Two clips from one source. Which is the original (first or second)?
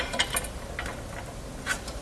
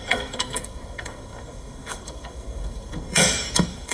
first